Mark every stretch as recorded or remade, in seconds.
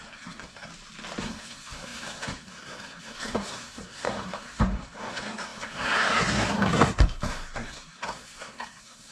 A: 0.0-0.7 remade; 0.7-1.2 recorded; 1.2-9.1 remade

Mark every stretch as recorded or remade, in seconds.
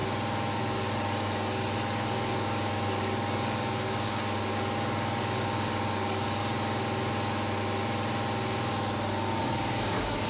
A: 0.0-0.5 recorded; 0.5-6.4 remade; 6.4-9.4 recorded; 9.4-10.3 remade